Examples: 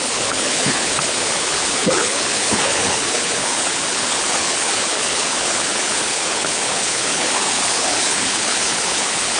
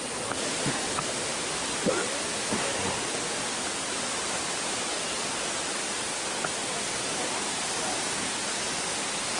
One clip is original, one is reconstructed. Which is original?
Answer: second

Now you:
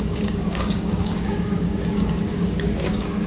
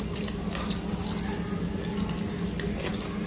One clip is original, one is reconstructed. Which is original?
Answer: second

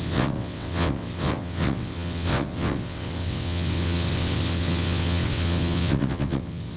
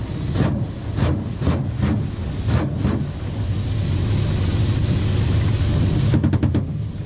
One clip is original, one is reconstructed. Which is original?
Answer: second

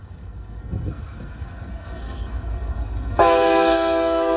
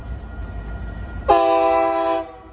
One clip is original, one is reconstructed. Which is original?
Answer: second